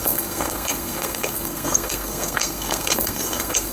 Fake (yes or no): yes